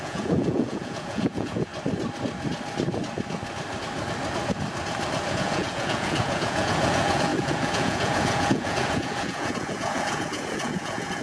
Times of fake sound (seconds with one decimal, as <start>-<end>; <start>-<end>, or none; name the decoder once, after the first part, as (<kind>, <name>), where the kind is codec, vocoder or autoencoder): 0.0-1.7 (vocoder, Vocos); 5.3-11.2